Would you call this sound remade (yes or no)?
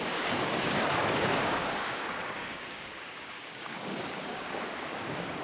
yes